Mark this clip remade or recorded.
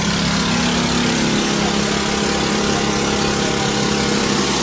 recorded